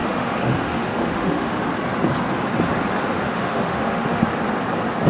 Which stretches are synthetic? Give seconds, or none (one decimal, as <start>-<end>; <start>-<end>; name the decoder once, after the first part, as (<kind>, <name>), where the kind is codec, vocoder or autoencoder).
0.0-1.6 (autoencoder, DAC-VAE); 3.1-4.2